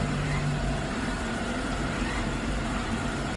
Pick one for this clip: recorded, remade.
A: remade